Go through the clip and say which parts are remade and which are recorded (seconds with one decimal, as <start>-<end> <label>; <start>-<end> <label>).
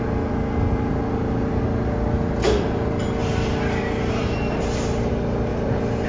0.0-3.2 recorded; 3.2-5.1 remade; 5.1-5.5 recorded; 5.5-6.1 remade